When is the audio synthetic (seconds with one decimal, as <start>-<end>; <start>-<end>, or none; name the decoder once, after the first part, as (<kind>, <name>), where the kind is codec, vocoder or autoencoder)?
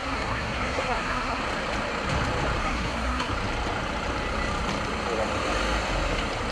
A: 0.0-1.4 (codec, SNAC); 2.6-3.3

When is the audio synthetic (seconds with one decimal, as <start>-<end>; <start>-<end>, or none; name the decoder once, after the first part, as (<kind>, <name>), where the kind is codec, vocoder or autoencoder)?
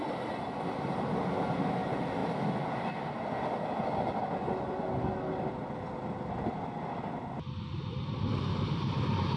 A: none